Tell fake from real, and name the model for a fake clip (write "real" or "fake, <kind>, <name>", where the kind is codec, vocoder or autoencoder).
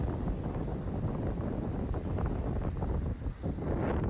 fake, vocoder, BigVGAN v2